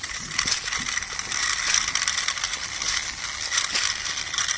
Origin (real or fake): real